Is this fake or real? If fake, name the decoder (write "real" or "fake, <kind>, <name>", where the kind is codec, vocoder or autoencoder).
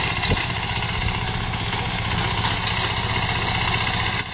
real